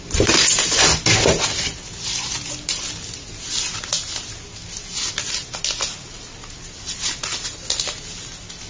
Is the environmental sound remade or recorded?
recorded